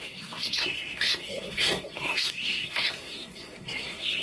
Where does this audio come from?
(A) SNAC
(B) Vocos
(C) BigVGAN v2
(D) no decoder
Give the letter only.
A